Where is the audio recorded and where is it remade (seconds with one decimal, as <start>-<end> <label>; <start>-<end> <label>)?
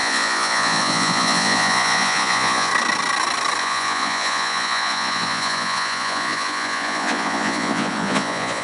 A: 0.0-2.7 remade; 2.7-3.6 recorded; 3.6-8.6 remade